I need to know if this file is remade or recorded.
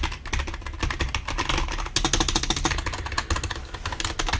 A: recorded